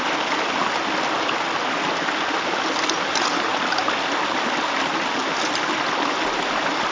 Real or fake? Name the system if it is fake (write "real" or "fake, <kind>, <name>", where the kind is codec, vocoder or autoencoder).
real